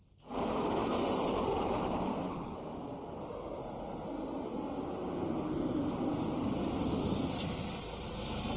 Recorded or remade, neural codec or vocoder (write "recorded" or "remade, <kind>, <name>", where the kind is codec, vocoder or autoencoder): recorded